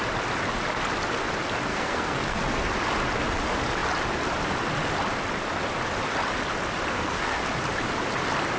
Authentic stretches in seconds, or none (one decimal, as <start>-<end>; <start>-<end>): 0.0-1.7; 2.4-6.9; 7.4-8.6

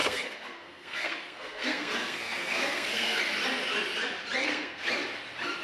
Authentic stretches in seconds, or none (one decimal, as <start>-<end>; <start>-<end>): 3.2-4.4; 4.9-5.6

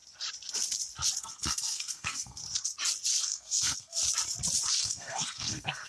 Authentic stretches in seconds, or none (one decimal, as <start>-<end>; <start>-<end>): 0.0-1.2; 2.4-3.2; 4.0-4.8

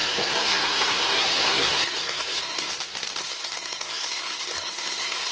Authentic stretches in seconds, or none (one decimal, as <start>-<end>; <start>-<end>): 2.7-3.2

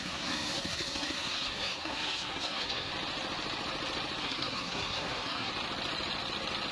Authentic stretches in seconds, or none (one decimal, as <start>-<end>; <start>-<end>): 2.9-4.2; 5.5-6.7